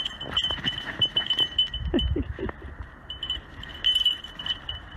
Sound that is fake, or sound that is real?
fake